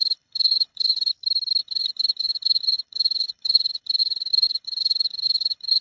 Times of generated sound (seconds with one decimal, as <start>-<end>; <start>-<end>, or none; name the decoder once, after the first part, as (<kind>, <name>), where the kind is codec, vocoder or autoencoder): 0.0-1.1 (codec, HILCodec); 1.6-5.8